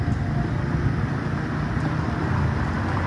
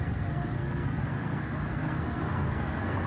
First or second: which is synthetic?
second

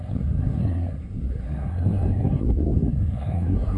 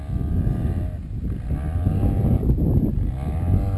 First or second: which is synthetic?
first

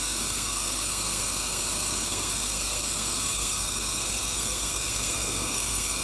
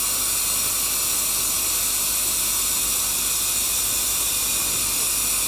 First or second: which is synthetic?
first